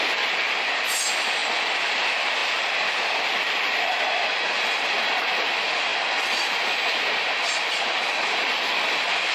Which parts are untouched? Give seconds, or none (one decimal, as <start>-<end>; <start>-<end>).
5.9-8.4